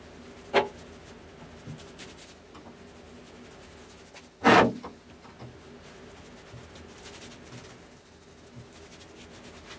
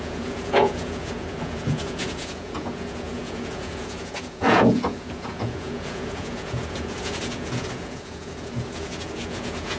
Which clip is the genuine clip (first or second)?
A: first